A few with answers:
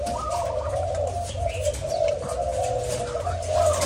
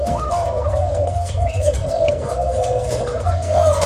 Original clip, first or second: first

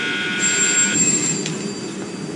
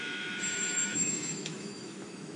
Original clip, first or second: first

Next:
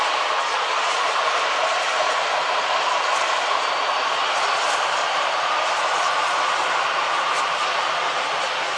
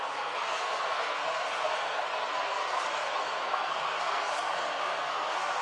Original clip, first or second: first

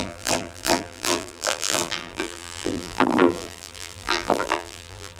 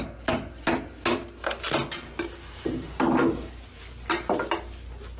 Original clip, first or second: second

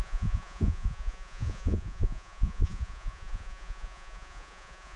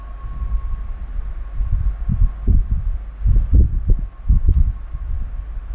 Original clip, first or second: second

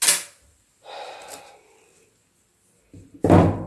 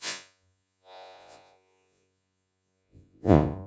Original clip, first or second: first